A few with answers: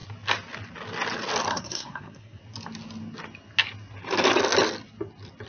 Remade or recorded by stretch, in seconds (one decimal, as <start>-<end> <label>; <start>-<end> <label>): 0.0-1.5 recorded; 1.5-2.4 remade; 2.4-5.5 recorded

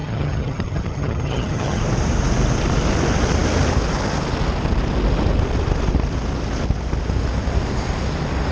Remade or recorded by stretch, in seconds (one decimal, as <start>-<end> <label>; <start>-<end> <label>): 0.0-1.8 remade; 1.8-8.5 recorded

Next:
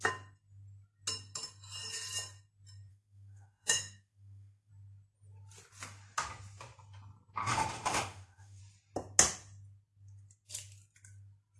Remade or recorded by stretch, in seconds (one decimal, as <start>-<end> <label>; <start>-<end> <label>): 0.0-2.9 recorded; 2.9-4.7 remade; 4.7-7.4 recorded; 7.4-8.6 remade; 8.6-11.6 recorded

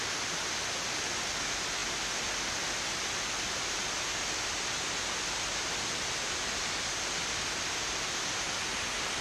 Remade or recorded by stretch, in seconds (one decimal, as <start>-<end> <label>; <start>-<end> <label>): 0.0-9.2 recorded